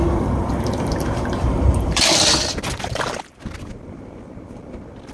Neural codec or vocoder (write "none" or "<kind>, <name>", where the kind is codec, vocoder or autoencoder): vocoder, BigVGAN v2